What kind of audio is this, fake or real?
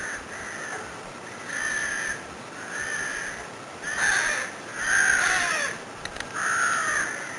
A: real